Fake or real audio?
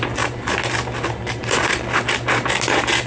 real